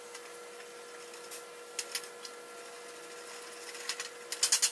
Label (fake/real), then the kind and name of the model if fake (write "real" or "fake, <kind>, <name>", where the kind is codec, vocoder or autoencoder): real